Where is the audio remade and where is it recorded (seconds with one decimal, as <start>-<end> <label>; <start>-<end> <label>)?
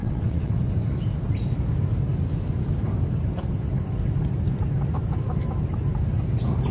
0.0-0.6 remade; 0.6-6.7 recorded